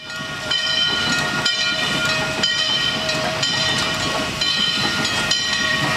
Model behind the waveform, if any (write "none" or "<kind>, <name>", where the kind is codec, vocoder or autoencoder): vocoder, BigVGAN v2